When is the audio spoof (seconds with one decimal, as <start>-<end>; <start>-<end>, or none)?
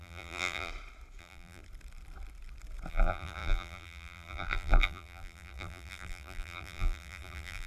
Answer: 0.0-0.7; 1.2-1.6; 2.9-7.7